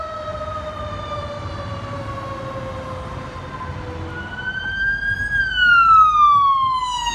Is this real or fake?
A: real